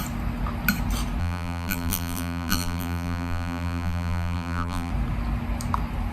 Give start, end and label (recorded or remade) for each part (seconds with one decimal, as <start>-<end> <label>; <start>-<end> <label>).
0.0-1.2 recorded; 1.2-4.9 remade; 4.9-6.1 recorded